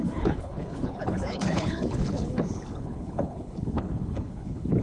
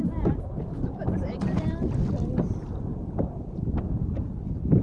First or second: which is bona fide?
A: second